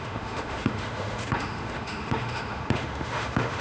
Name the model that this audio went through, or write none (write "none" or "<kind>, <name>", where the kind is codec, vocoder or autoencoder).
autoencoder, DAC-VAE